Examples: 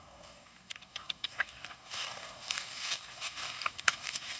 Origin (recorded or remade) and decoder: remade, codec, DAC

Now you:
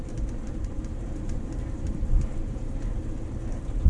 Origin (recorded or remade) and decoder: remade, vocoder, BigVGAN v2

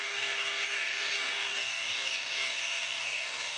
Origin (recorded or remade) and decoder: remade, codec, DAC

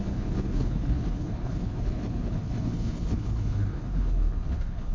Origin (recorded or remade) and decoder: remade, codec, HILCodec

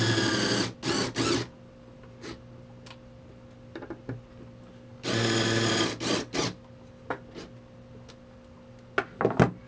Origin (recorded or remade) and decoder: recorded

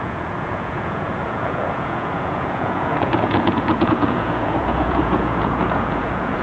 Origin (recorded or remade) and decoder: remade, vocoder, Vocos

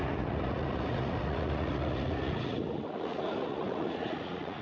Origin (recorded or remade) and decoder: remade, vocoder, Vocos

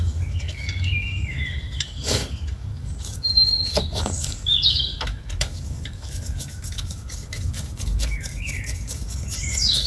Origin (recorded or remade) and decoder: remade, codec, DAC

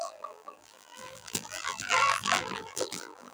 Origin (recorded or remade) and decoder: remade, vocoder, BigVGAN v2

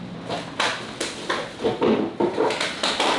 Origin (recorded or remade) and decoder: recorded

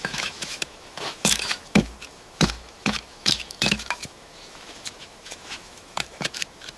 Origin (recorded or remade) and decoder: remade, autoencoder, DAC-VAE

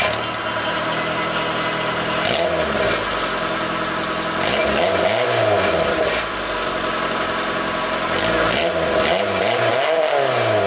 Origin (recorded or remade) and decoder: recorded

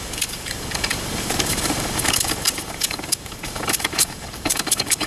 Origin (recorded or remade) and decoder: remade, codec, DAC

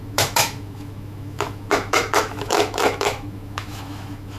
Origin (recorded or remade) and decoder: remade, autoencoder, DAC-VAE